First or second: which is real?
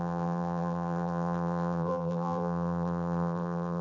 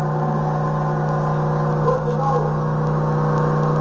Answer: second